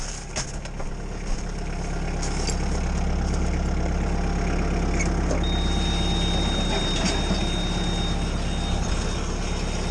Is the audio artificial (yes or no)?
no